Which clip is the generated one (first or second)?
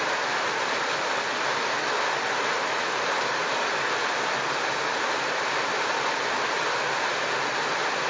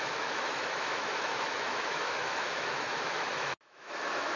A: second